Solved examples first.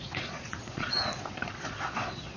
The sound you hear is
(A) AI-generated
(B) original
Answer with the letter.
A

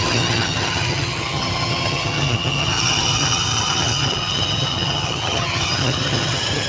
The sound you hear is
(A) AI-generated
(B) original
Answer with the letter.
A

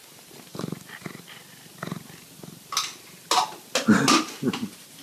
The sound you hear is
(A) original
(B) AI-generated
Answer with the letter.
A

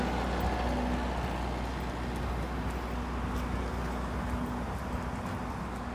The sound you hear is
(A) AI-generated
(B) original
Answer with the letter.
B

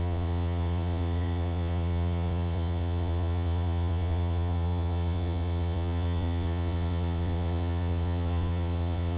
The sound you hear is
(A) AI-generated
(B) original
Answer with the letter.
A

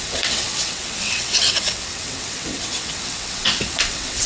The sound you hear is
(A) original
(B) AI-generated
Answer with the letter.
B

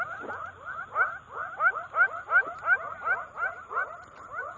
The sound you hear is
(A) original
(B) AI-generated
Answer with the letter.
A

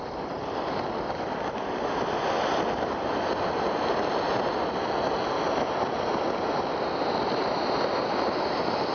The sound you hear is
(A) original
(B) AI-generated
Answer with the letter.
A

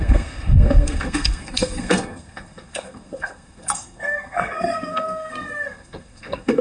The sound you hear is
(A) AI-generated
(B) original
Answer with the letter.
A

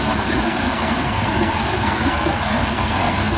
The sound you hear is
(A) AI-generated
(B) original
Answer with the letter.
A